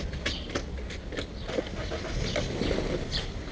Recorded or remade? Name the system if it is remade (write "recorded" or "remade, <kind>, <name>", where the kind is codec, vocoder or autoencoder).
recorded